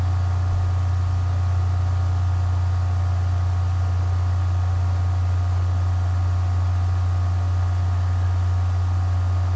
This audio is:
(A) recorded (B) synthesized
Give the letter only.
A